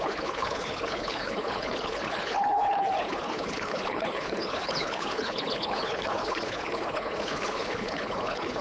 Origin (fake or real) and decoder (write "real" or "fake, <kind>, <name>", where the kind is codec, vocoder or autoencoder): fake, codec, HILCodec